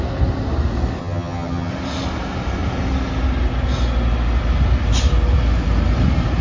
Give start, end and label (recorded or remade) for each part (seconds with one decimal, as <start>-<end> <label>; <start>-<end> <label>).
0.0-1.0 recorded; 1.0-1.7 remade; 1.7-6.4 recorded